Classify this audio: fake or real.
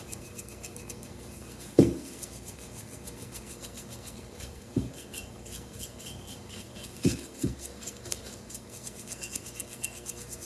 fake